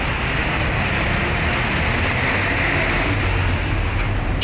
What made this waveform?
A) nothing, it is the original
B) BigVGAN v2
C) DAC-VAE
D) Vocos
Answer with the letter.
A